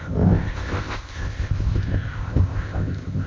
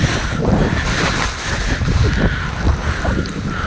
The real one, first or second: second